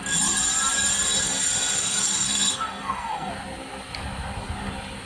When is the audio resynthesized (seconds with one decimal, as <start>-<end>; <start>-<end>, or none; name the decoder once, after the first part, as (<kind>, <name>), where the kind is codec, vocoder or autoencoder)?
1.8-3.3 (codec, SNAC)